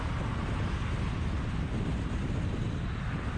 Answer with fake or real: real